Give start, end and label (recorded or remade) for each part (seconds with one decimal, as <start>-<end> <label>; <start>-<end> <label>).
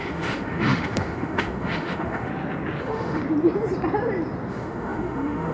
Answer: 0.0-2.3 remade; 2.3-2.8 recorded; 2.8-3.2 remade; 3.2-4.5 recorded; 4.5-5.5 remade